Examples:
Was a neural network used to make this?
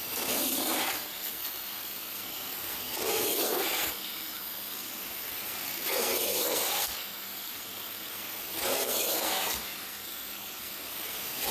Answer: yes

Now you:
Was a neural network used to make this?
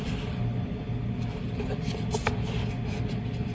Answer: no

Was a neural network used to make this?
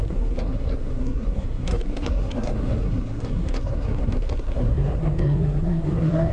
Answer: yes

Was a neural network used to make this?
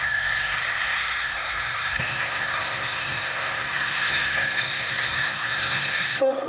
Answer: yes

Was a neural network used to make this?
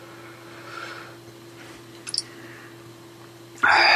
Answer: no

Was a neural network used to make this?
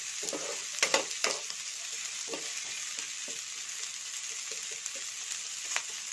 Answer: no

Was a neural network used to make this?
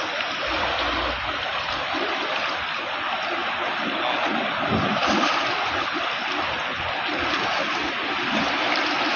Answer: no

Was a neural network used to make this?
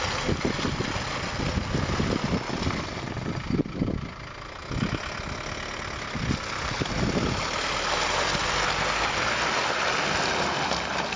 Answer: no